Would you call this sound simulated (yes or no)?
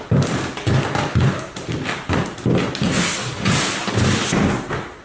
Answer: no